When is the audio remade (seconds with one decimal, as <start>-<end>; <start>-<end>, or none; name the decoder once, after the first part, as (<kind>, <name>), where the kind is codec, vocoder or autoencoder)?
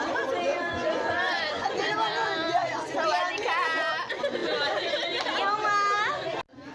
0.5-1.9 (vocoder, Vocos)